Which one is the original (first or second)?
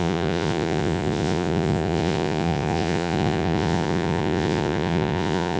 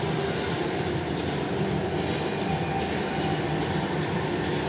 second